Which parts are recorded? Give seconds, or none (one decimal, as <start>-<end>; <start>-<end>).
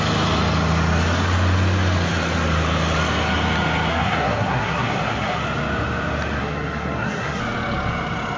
0.0-3.9; 5.4-6.4; 7.4-8.4